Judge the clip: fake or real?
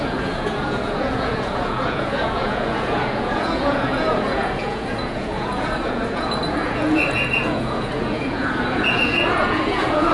fake